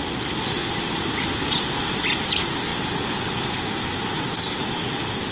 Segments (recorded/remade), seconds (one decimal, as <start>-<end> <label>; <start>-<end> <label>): 0.0-5.3 recorded